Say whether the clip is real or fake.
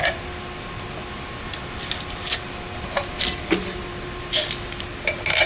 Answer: real